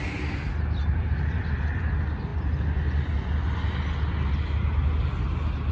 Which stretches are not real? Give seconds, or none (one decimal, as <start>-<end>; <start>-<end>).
none